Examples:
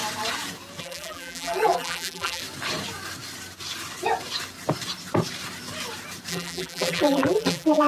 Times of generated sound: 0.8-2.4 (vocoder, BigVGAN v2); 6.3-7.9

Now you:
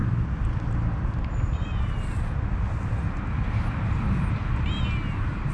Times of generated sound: none

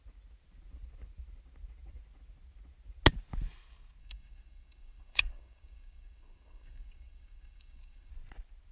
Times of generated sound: 4.0-8.1 (codec, DAC)

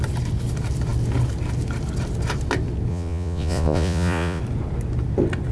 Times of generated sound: 2.9-4.4 (vocoder, Vocos)

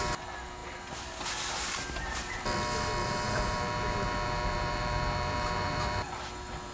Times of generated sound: 3.0-6.1 (vocoder, BigVGAN v2)

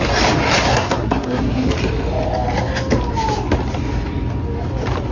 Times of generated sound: 0.7-1.7 (codec, SNAC)

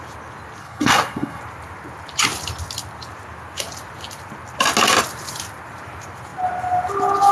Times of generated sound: 0.6-1.4 (codec, SNAC)